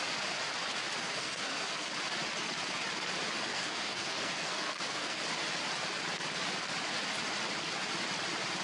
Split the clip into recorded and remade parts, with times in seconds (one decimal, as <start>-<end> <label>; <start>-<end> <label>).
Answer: 0.0-1.0 recorded; 1.0-1.9 remade; 1.9-3.5 recorded; 3.5-5.2 remade; 5.2-8.6 recorded